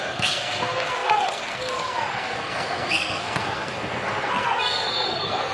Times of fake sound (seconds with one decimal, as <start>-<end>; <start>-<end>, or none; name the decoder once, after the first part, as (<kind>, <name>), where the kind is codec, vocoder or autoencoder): 0.0-5.5 (codec, SNAC)

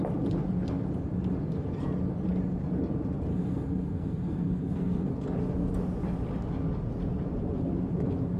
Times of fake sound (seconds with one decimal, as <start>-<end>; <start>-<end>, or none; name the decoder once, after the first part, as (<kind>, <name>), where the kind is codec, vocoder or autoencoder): 3.3-5.1 (codec, SNAC)

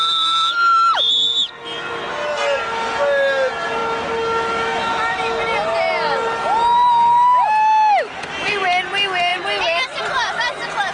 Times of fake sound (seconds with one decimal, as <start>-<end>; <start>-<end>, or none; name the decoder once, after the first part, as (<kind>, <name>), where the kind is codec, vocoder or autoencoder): none

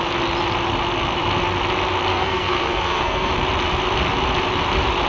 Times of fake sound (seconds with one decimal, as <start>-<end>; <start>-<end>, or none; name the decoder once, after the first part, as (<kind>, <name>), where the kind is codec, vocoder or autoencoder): 2.1-3.3 (codec, SNAC)

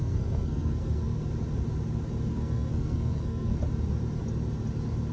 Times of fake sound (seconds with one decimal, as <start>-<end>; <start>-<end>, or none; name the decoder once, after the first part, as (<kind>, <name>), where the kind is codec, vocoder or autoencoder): 0.0-1.2 (codec, SNAC); 2.3-3.6

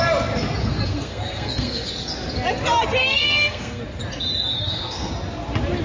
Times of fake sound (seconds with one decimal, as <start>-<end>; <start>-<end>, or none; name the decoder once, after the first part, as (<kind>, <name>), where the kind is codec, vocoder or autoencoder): 0.6-1.9 (codec, SNAC); 3.0-3.8; 4.5-5.1

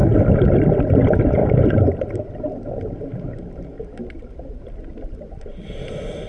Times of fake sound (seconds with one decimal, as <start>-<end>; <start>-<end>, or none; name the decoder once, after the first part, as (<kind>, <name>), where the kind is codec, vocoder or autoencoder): none

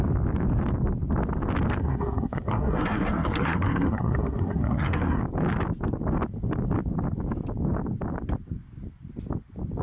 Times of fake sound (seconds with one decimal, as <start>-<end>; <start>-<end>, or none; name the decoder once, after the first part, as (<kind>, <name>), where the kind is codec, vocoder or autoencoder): 1.8-5.2 (codec, SNAC)